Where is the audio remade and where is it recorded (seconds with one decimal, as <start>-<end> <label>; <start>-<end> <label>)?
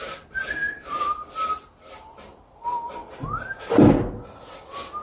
0.0-5.0 recorded